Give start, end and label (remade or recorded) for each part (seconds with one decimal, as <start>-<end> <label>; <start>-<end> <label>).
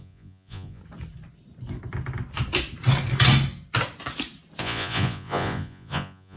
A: 0.0-0.8 remade; 0.8-4.6 recorded; 4.6-6.4 remade